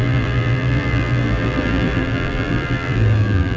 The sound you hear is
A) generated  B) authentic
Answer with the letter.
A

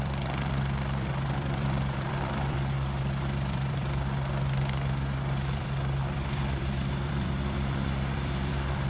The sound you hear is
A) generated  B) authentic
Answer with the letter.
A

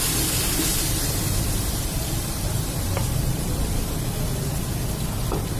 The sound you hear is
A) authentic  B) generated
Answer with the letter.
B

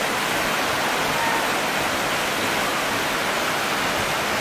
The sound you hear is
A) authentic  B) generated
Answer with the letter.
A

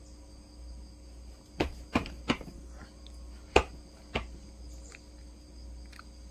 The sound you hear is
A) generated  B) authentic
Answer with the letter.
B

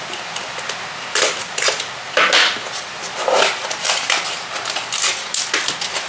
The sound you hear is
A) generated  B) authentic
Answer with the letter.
B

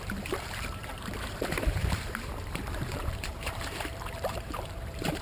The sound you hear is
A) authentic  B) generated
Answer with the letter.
B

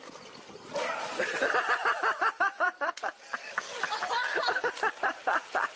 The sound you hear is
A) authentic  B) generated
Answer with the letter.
B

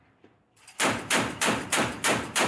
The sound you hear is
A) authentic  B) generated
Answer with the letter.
B